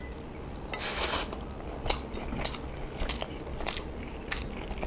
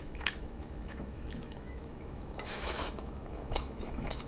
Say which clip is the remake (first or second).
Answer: second